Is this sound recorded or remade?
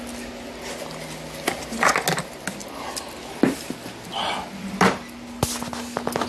recorded